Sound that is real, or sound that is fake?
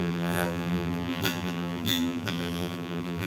fake